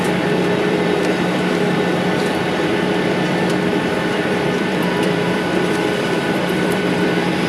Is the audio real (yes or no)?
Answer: no